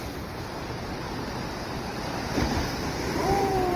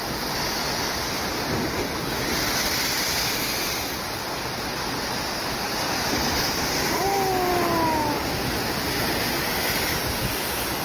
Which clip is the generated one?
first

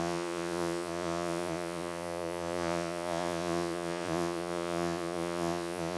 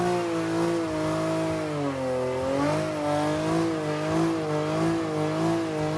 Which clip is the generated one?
first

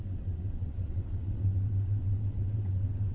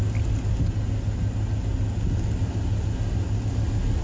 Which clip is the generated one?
first